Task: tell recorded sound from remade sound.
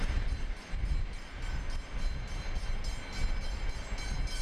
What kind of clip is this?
recorded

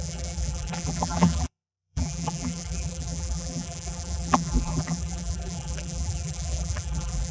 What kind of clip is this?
remade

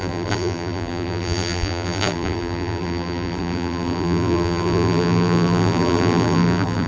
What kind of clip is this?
remade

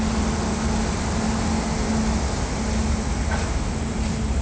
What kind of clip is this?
recorded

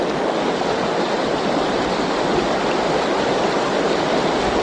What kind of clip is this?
recorded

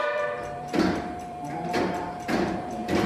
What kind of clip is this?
remade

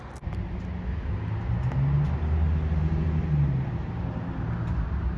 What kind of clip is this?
recorded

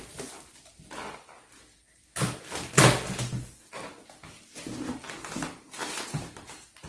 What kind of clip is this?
recorded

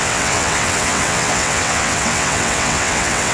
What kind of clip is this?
remade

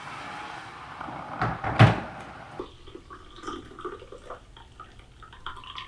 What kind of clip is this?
recorded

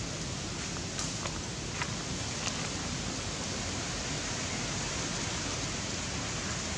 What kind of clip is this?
recorded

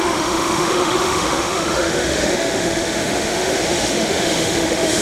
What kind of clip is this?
remade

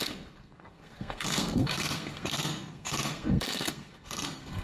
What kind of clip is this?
remade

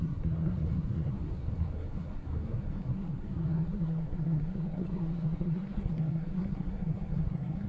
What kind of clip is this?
remade